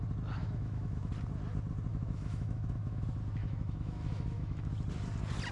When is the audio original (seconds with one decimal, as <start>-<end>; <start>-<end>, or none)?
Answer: 0.0-0.4; 1.1-1.9; 3.0-3.4; 4.7-5.5